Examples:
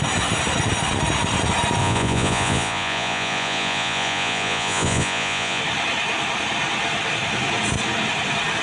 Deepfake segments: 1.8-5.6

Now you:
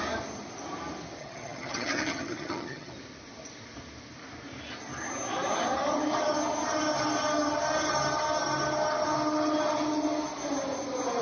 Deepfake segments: 1.2-2.9

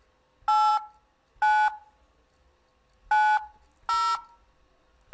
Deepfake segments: none

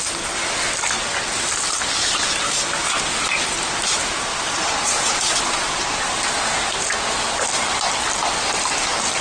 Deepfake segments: 4.3-6.1

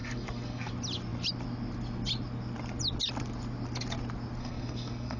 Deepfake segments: 0.0-0.7; 4.4-5.2

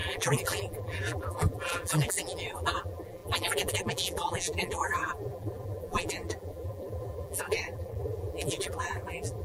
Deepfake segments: 0.0-9.4